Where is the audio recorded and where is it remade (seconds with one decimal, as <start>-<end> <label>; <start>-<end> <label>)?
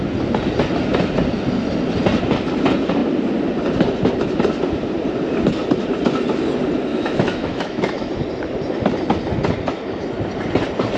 0.0-6.9 recorded; 6.9-8.1 remade; 8.1-11.0 recorded